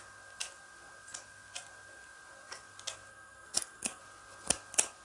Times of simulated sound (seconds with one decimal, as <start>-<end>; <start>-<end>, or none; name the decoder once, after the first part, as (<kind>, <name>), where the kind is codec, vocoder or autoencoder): 3.1-4.0 (codec, SNAC)